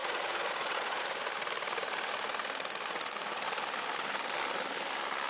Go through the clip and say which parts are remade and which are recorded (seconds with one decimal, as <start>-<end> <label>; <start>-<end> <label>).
0.0-1.0 remade; 1.0-5.3 recorded